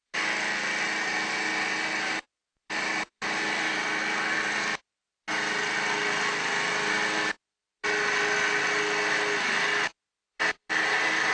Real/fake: real